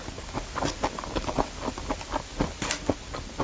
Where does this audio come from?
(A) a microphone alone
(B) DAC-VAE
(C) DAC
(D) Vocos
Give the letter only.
A